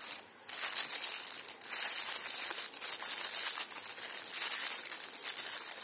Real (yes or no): yes